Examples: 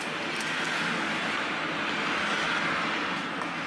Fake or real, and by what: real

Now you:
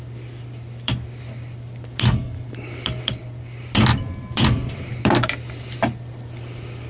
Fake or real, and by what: fake, vocoder, BigVGAN v2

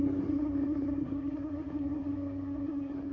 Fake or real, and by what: fake, codec, SNAC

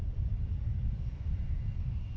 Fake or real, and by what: real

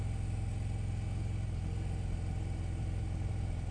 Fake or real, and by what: real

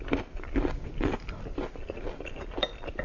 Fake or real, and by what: real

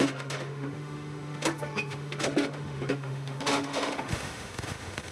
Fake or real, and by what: fake, autoencoder, DAC-VAE